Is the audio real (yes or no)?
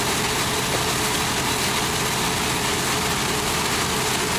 yes